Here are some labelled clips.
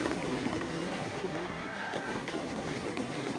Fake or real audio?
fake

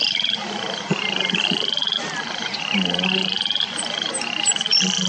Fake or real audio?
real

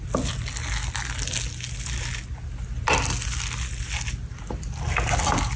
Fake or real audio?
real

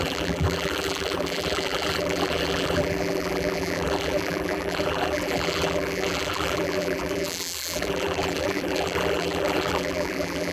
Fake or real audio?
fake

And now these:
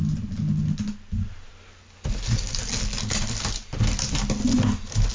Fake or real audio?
real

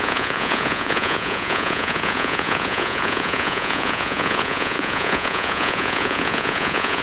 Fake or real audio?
fake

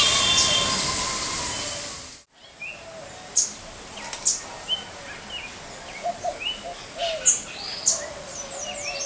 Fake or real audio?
real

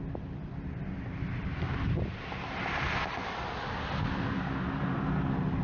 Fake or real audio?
real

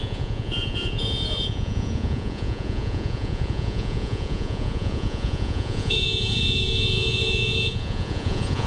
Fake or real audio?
fake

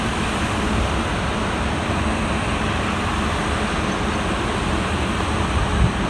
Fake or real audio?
real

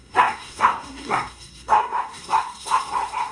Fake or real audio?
fake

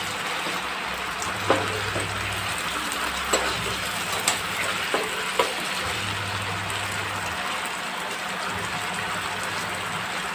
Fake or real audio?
real